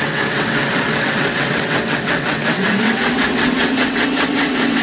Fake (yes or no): yes